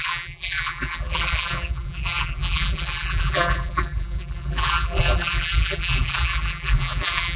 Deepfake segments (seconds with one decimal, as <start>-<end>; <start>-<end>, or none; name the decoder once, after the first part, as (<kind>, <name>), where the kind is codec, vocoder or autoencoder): 0.0-7.4 (vocoder, BigVGAN v2)